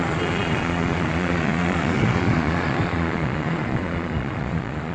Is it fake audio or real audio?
fake